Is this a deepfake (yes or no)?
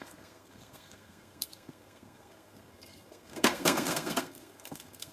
yes